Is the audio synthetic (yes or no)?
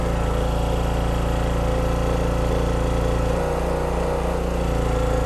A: no